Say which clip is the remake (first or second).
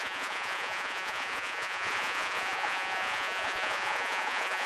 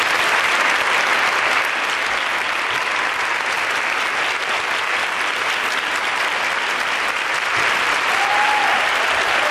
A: first